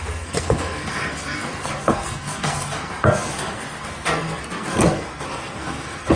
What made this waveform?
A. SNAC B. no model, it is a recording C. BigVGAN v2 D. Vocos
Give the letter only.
A